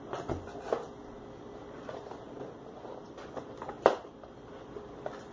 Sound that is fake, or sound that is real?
real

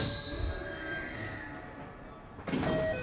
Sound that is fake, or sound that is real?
real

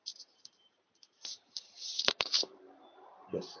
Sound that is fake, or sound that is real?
fake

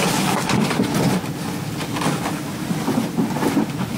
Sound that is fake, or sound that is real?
real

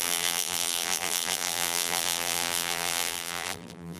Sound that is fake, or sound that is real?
fake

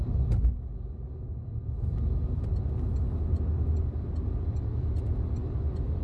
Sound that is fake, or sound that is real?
real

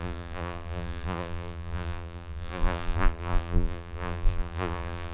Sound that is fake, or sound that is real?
fake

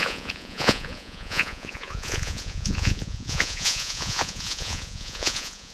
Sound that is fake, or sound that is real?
fake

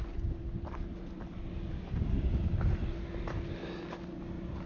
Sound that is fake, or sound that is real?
real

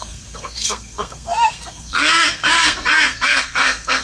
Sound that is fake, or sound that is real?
fake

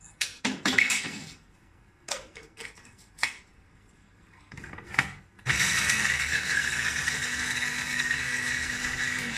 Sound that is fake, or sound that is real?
fake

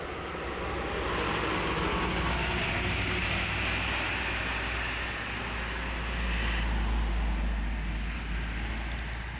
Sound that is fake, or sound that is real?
real